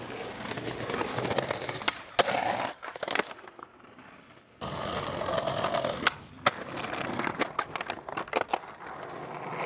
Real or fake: real